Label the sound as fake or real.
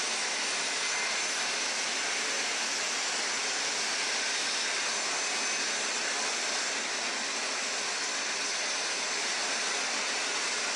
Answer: real